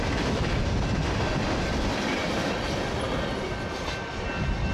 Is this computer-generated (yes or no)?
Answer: no